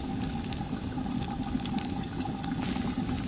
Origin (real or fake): real